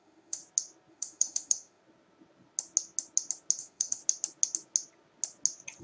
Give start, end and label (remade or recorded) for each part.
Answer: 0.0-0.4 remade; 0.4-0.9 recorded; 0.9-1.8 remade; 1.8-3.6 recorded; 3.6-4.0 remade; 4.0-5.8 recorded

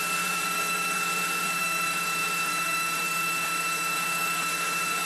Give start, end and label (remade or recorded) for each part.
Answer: 0.0-5.1 remade

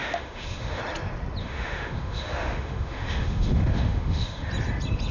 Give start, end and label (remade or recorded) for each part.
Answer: 0.0-0.8 remade; 0.8-1.4 recorded; 1.4-4.5 remade; 4.5-5.1 recorded